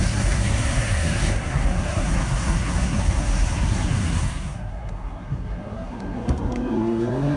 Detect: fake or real fake